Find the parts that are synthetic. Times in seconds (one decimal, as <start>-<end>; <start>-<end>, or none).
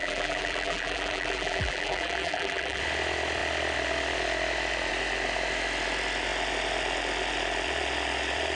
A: 0.0-2.8